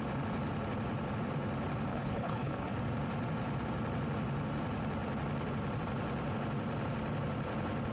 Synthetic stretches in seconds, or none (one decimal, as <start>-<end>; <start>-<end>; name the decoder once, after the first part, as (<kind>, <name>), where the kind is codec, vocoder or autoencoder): 1.9-2.7 (codec, HILCodec)